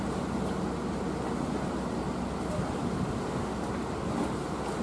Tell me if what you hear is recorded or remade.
recorded